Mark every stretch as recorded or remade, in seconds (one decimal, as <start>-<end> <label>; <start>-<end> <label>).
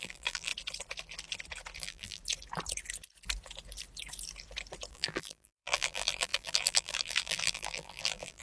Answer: 0.0-0.5 remade; 0.5-1.8 recorded; 1.8-2.2 remade; 2.2-4.9 recorded; 4.9-8.4 remade